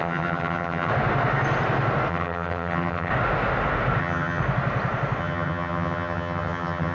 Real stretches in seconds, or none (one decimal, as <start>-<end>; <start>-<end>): 0.9-2.1; 3.1-4.0; 4.4-5.2